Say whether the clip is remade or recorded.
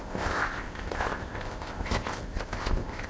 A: remade